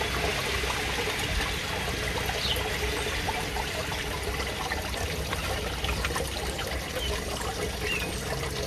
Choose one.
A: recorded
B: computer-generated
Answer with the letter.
A